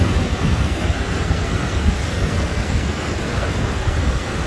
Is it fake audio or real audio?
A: fake